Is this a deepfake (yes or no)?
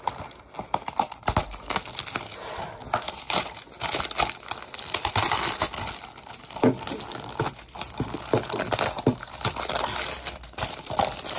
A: no